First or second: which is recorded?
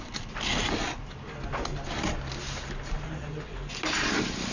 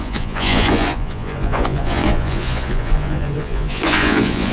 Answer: first